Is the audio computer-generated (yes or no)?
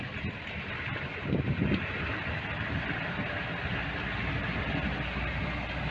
no